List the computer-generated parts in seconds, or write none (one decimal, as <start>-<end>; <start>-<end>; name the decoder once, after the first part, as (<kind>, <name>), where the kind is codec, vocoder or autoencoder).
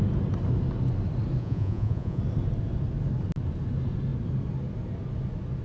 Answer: 1.4-2.2 (vocoder, Vocos)